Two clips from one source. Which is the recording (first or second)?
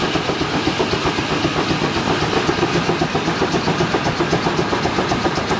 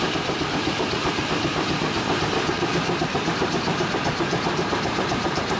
first